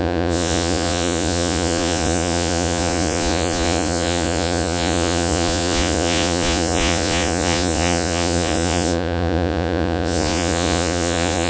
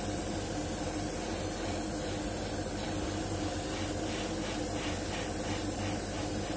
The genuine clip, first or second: second